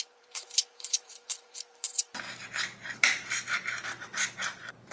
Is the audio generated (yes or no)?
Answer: yes